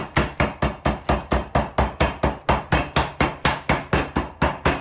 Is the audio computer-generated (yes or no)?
no